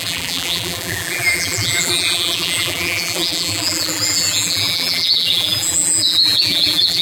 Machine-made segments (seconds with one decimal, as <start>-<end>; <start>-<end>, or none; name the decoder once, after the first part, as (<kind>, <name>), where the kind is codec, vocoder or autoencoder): 0.0-7.0 (vocoder, BigVGAN v2)